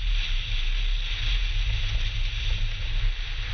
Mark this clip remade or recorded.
recorded